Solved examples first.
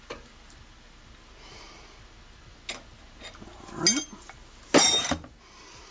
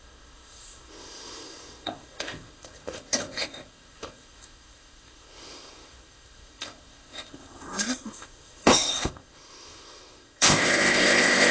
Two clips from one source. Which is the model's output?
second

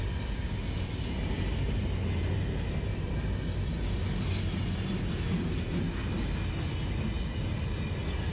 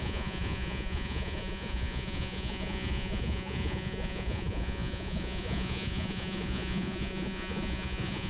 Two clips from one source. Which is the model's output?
second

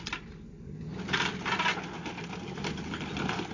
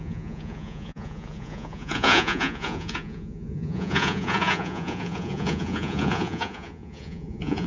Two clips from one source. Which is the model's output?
second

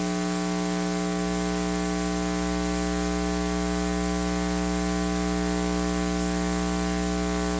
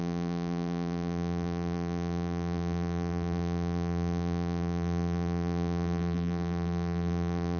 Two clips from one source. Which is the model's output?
second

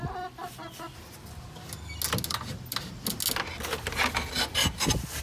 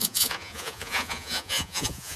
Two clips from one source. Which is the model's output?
second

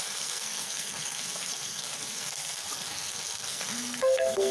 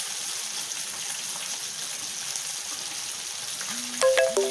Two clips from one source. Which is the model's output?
first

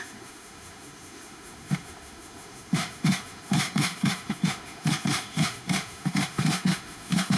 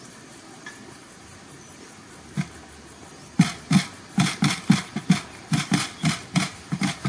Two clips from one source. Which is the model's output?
first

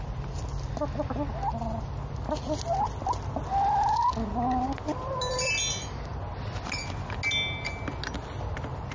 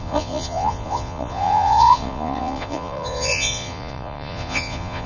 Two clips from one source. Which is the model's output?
second